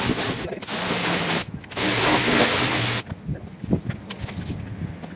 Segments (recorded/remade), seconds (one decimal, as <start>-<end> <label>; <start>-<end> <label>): 0.0-5.2 recorded

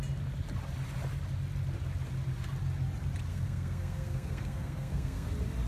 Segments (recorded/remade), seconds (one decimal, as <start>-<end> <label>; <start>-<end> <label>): 0.0-3.3 recorded; 3.3-5.3 remade; 5.3-5.7 recorded

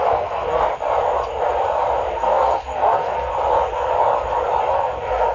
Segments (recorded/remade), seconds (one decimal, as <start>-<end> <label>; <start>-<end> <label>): 0.0-0.7 remade; 0.7-2.1 recorded; 2.1-3.3 remade; 3.3-4.7 recorded; 4.7-5.3 remade

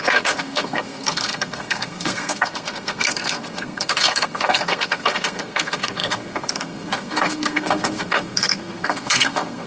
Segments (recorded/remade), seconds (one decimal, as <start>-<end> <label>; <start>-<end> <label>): 0.0-9.7 remade

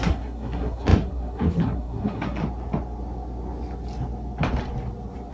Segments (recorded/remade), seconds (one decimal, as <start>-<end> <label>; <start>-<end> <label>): 0.0-2.4 remade; 2.4-5.3 recorded

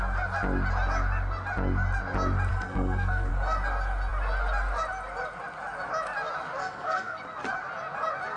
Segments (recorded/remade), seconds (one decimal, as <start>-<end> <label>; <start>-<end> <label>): 0.0-2.5 recorded; 2.5-3.3 remade; 3.3-6.6 recorded; 6.6-7.2 remade; 7.2-8.4 recorded